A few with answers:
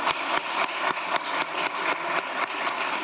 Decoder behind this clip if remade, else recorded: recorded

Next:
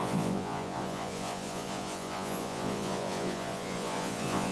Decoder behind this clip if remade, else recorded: remade, vocoder, Vocos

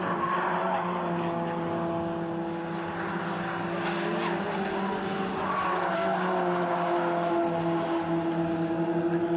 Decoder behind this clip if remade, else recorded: recorded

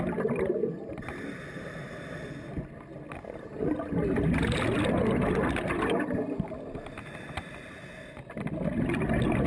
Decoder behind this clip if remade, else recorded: recorded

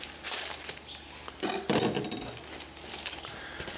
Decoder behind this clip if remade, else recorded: recorded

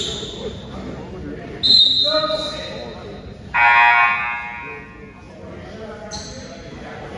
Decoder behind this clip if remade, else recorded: recorded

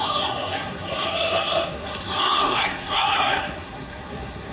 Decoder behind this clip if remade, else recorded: remade, codec, SNAC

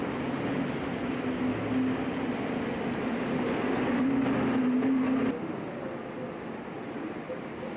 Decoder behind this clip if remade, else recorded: recorded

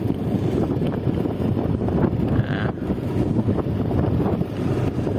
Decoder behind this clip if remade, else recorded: remade, vocoder, BigVGAN v2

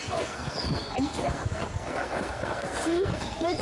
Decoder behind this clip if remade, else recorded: remade, codec, SNAC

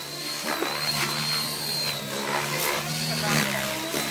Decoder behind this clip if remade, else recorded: recorded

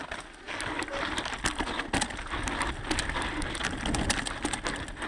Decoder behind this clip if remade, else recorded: recorded